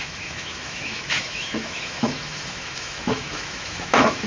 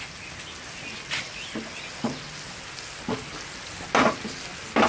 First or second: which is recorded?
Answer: second